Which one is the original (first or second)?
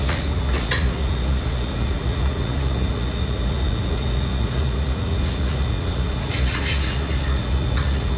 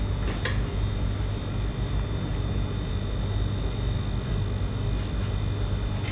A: second